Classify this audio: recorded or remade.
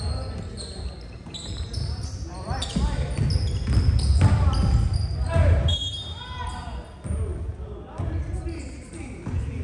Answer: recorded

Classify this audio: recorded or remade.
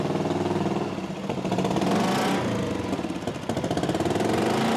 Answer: recorded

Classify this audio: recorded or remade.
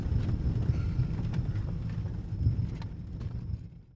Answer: recorded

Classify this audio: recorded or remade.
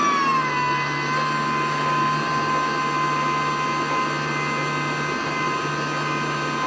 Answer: recorded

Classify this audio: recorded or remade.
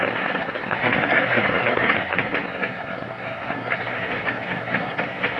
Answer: remade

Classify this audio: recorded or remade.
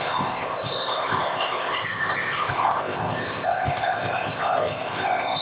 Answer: remade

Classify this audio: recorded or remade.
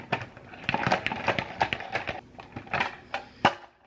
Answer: recorded